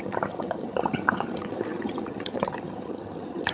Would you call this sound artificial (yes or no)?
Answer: yes